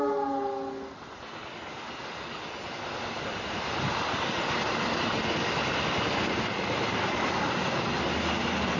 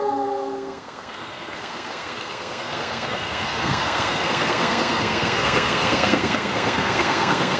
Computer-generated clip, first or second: second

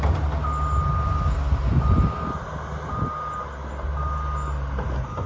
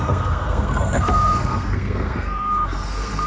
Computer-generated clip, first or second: second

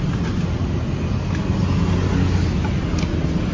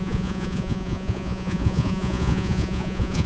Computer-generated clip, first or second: second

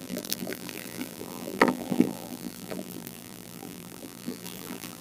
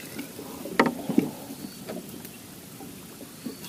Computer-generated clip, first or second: first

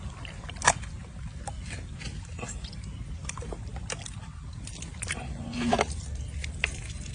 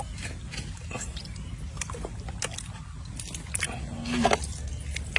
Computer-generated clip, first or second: first